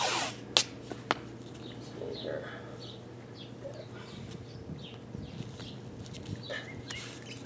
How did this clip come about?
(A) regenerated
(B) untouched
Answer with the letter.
B